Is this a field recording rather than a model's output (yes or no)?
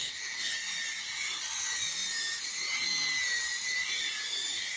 no